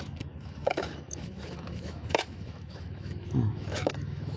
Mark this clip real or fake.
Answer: fake